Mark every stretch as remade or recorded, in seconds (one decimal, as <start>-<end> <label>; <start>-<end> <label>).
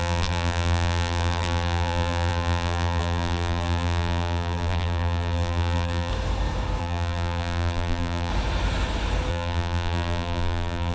0.0-6.1 remade; 6.1-6.8 recorded; 6.8-8.3 remade; 8.3-9.3 recorded; 9.3-10.9 remade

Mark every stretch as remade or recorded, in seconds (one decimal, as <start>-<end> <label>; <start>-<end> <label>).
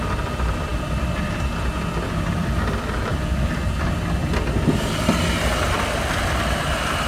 0.0-7.1 recorded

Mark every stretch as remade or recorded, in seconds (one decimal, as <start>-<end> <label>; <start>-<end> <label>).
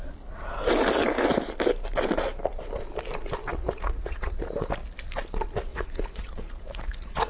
0.0-3.5 recorded; 3.5-4.7 remade; 4.7-5.7 recorded; 5.7-7.3 remade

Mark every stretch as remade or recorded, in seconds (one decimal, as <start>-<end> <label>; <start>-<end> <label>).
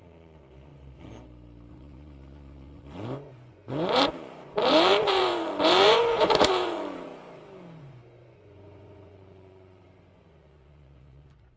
0.0-0.7 remade; 0.7-1.7 recorded; 1.7-7.1 remade; 7.1-7.8 recorded; 7.8-11.6 remade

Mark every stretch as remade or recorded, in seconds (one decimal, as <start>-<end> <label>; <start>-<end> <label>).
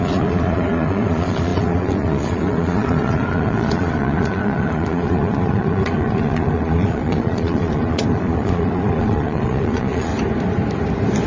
0.0-10.1 remade; 10.1-11.3 recorded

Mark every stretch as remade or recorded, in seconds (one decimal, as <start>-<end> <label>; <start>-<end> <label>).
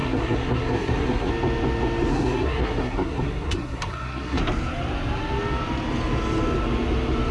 0.0-1.3 remade; 1.3-2.1 recorded; 2.1-4.4 remade; 4.4-7.3 recorded